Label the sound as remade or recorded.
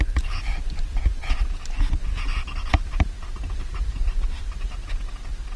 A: recorded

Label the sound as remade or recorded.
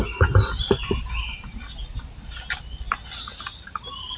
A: recorded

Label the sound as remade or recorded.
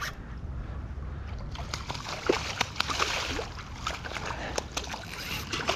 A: recorded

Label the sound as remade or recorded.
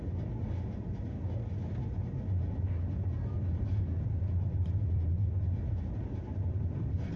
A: recorded